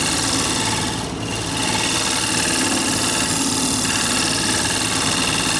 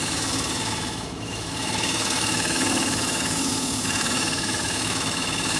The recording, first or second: first